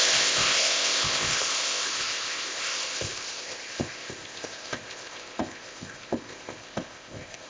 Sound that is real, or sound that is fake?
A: fake